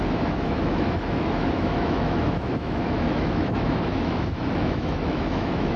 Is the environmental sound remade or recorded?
remade